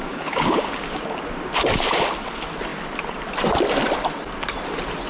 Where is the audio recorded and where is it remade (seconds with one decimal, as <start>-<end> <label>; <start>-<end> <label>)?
0.0-1.0 remade; 1.0-5.1 recorded